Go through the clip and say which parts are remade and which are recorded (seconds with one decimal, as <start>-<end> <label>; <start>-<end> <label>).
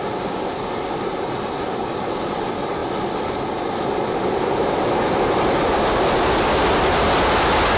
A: 0.0-7.8 recorded